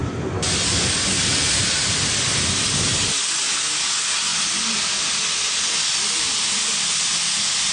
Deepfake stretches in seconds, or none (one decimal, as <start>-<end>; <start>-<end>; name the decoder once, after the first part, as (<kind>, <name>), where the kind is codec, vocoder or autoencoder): none